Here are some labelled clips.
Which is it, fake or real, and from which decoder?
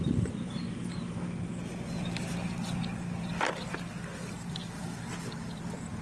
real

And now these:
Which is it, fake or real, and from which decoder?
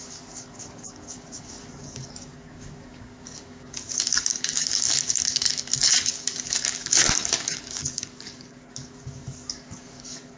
fake, codec, DAC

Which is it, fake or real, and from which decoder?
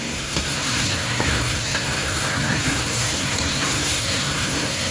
fake, codec, SNAC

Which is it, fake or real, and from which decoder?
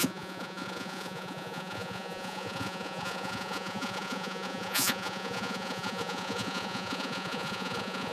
fake, vocoder, Vocos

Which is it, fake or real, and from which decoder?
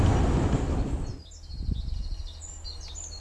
real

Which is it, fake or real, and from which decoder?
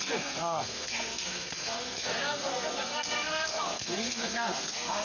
fake, codec, SNAC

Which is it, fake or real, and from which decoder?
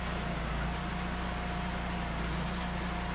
real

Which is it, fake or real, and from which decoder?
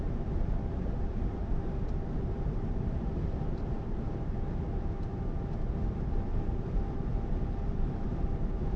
fake, vocoder, BigVGAN v2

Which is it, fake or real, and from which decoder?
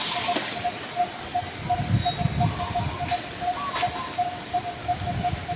real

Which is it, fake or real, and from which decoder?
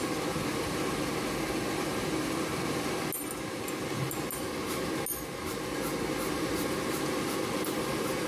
real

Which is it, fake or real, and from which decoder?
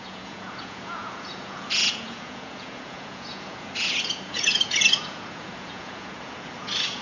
fake, vocoder, Vocos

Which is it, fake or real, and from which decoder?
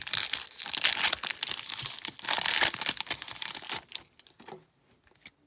real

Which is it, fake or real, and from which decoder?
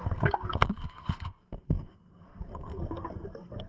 fake, codec, SNAC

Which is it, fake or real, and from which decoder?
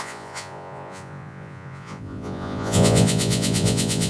fake, vocoder, Vocos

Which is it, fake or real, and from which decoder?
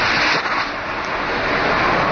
real